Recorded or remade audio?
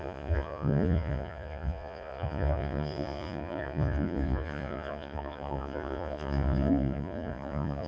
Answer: remade